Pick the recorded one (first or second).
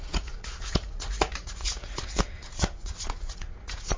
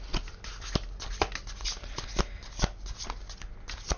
second